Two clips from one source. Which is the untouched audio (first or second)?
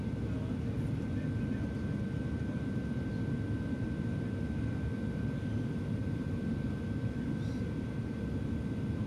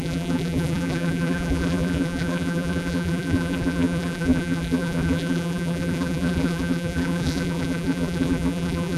first